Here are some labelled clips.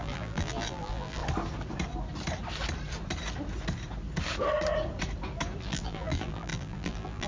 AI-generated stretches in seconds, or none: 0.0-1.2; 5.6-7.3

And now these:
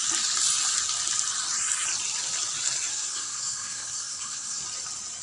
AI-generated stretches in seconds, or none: 2.9-4.6

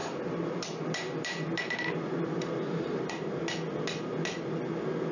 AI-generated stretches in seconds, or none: 0.0-3.1